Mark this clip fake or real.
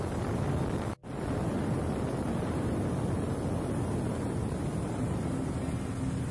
real